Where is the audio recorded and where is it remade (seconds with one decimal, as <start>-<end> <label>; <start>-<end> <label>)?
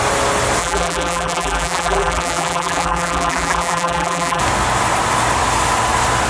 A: 0.0-0.6 recorded; 0.6-4.4 remade; 4.4-6.3 recorded